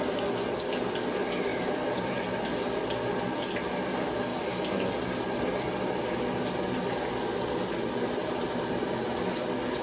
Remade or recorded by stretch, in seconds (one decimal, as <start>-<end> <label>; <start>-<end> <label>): 0.0-1.5 recorded; 1.5-2.2 remade; 2.2-8.2 recorded; 8.2-9.2 remade; 9.2-9.8 recorded